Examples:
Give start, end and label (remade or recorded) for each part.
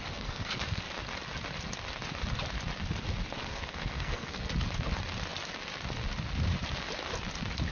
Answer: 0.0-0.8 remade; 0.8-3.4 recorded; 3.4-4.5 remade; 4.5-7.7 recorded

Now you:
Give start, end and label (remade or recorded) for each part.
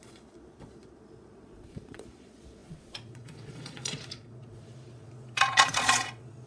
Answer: 0.0-6.5 remade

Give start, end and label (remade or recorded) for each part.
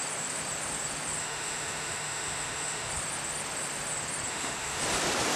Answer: 0.0-1.2 recorded; 1.2-2.9 remade; 2.9-4.3 recorded; 4.3-4.8 remade; 4.8-5.4 recorded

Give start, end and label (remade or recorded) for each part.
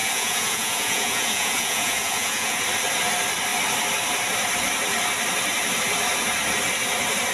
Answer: 0.0-2.6 remade; 2.6-7.3 recorded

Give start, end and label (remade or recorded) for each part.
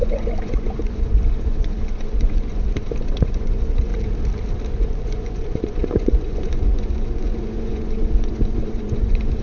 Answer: 0.0-3.9 remade; 3.9-4.7 recorded; 4.7-9.4 remade